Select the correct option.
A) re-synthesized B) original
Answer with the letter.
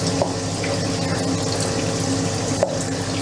B